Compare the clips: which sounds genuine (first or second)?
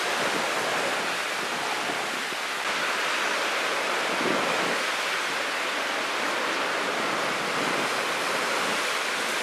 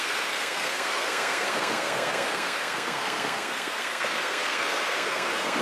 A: first